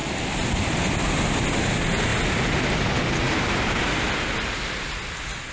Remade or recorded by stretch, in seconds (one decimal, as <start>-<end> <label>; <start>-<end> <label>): 0.0-5.5 recorded